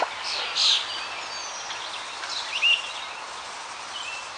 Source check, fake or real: real